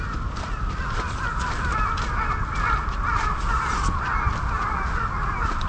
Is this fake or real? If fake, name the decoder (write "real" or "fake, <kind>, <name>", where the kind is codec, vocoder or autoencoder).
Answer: real